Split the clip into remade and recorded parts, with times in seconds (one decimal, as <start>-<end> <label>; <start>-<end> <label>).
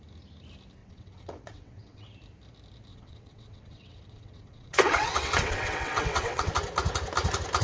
0.0-0.8 recorded; 0.8-2.1 remade; 2.1-2.9 recorded; 2.9-6.5 remade; 6.5-7.6 recorded